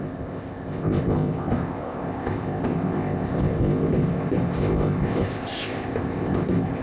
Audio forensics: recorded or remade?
remade